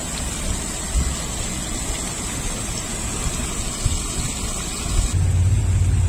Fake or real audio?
real